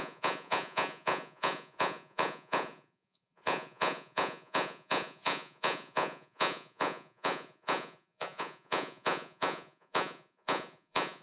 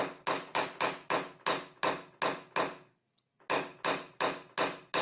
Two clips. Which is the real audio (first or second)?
second